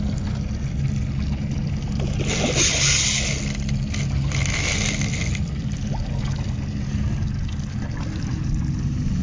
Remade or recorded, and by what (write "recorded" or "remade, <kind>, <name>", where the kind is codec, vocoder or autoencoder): recorded